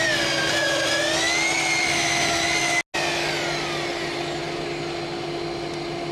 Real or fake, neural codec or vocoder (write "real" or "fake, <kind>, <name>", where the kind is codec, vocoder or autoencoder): real